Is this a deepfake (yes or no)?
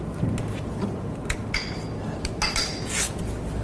no